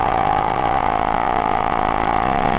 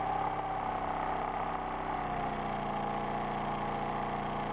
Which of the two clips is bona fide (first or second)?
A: second